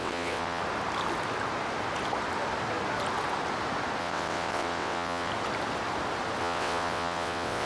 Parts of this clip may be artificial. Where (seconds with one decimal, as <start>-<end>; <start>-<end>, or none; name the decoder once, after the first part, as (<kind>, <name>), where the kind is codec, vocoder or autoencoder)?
0.0-0.6 (vocoder, WaveNeXt); 4.0-5.3; 6.4-7.7